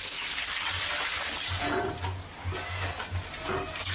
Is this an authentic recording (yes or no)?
yes